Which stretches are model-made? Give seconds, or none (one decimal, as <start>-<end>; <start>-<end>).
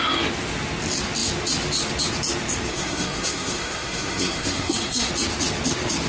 2.7-5.1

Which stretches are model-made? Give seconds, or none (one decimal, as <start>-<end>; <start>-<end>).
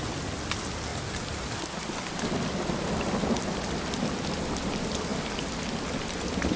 0.9-2.0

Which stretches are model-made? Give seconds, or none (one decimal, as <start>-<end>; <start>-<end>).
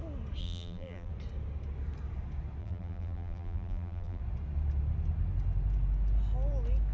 0.4-1.1; 2.6-4.2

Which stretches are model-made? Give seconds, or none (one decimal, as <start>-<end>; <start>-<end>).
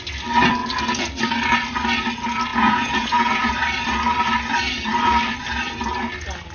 2.5-3.5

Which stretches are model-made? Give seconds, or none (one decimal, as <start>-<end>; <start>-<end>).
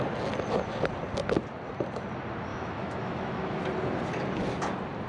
2.5-3.6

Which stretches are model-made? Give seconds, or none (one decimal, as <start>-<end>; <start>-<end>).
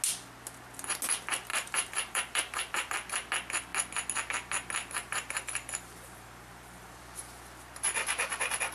1.5-2.9; 4.8-7.0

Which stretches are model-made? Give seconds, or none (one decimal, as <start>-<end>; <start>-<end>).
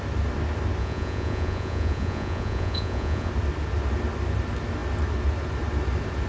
0.8-3.3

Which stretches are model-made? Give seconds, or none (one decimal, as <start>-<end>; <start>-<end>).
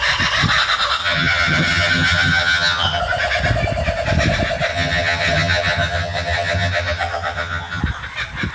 1.0-3.0; 4.7-7.8